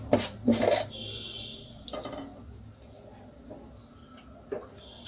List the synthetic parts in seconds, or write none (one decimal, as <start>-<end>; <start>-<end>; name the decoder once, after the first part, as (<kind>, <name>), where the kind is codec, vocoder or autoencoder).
none